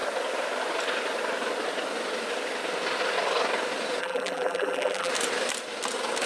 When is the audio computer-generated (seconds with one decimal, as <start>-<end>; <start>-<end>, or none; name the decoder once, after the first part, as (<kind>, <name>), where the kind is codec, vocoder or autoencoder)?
4.0-5.1 (vocoder, BigVGAN v2)